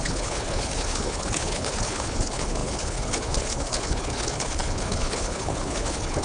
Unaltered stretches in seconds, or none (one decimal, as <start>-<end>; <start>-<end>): none